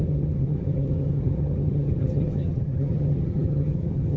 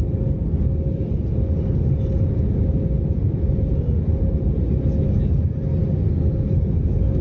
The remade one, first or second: first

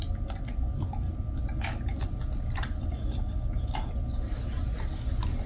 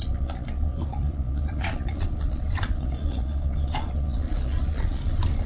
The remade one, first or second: second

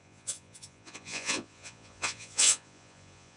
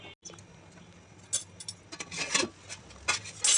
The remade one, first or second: first